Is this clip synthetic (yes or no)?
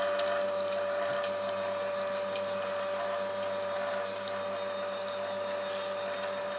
no